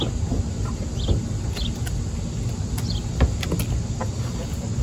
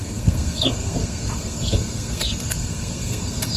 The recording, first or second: first